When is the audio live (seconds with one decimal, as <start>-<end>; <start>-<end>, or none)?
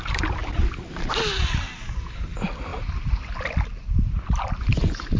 0.0-5.2